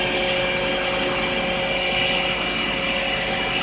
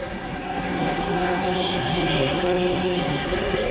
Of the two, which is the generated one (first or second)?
second